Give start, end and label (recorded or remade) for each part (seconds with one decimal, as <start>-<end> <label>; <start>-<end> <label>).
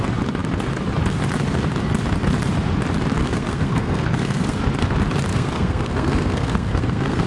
0.0-3.2 recorded; 3.2-4.6 remade; 4.6-5.3 recorded; 5.3-7.3 remade